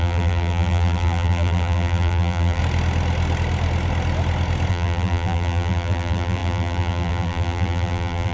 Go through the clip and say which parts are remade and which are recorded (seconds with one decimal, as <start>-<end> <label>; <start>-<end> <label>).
0.0-2.6 remade; 2.6-4.7 recorded; 4.7-8.3 remade